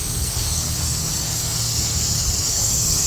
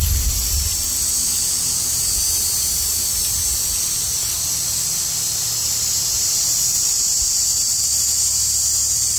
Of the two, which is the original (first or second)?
second